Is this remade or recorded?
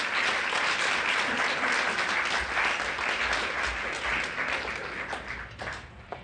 recorded